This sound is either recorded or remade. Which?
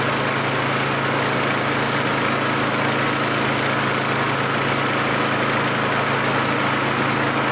recorded